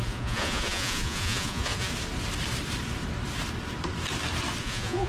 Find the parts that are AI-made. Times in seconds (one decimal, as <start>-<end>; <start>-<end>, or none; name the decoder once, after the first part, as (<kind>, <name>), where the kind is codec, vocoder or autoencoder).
0.0-1.9 (vocoder, Vocos); 4.6-5.1